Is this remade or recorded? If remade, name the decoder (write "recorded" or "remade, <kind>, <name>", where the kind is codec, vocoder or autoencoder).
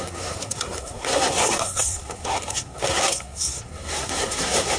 remade, codec, SNAC